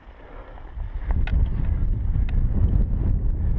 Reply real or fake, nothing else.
real